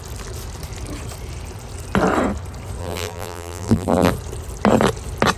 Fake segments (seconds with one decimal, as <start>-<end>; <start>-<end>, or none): 2.8-4.1